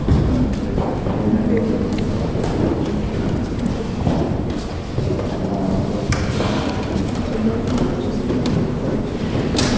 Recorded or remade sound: recorded